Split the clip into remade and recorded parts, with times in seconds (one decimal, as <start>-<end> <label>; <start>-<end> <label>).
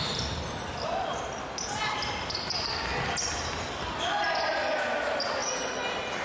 0.0-6.2 recorded